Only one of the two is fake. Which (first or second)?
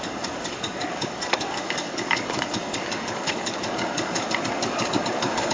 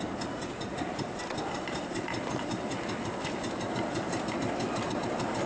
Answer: first